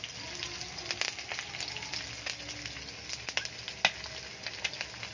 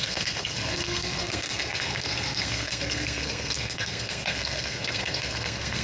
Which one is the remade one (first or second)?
second